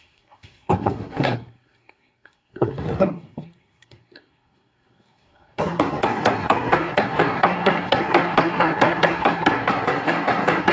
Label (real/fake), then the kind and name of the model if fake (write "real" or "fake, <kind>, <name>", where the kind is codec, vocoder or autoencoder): fake, codec, SNAC